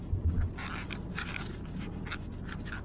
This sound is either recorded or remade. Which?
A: recorded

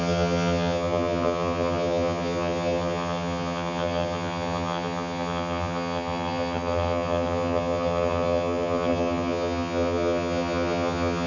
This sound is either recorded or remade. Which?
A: remade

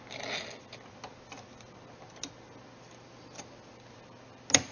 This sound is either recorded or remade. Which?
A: recorded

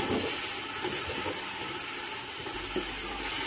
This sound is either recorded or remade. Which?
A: recorded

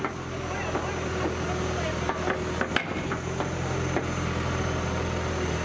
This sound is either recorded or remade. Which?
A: recorded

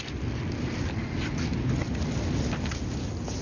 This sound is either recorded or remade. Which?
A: recorded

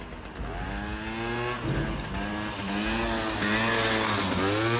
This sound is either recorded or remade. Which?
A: recorded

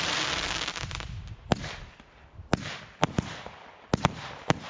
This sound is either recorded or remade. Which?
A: recorded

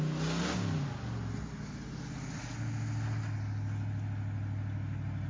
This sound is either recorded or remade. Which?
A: recorded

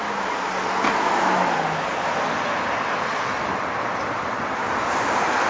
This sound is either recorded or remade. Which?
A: recorded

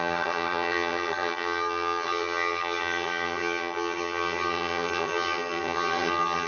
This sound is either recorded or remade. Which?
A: remade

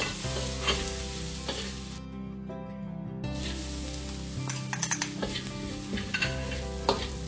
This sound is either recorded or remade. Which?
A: recorded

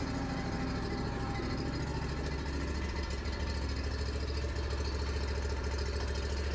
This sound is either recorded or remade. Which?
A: recorded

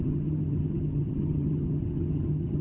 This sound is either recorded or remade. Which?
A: remade